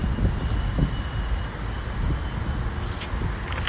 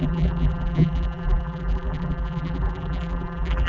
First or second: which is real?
first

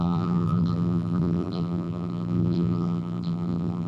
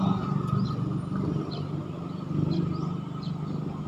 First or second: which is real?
second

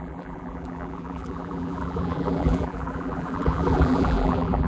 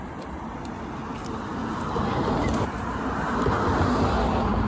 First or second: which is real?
second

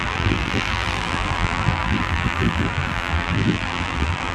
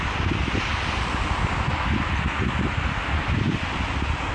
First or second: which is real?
second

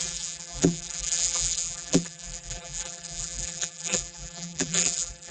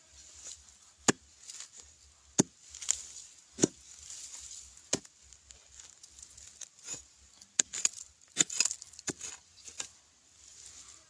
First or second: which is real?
second